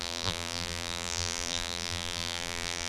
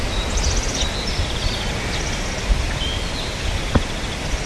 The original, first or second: second